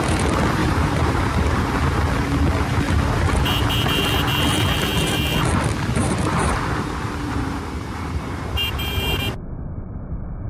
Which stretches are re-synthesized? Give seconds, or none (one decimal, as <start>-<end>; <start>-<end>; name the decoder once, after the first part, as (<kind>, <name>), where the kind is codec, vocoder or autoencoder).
0.6-1.6 (vocoder, BigVGAN v2); 6.0-9.2